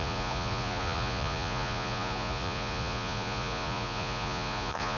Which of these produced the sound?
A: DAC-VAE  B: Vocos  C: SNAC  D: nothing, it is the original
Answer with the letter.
B